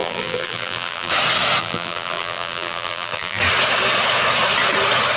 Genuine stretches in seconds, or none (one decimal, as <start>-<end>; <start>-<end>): 1.1-1.6; 3.4-5.2